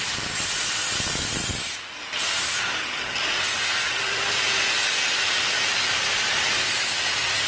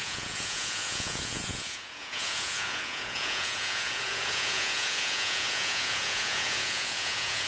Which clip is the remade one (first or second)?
second